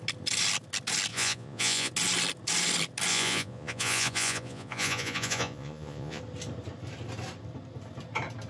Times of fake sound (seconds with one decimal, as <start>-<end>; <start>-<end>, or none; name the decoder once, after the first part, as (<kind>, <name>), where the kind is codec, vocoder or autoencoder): 1.1-1.9 (vocoder, Vocos); 3.1-6.2